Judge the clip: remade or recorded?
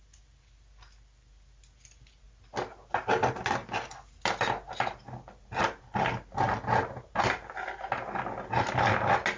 recorded